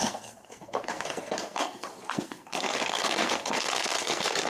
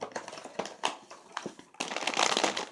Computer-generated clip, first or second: first